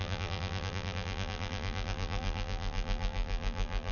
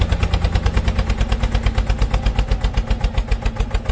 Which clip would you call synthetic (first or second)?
first